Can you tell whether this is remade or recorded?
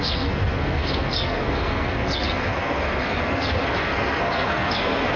remade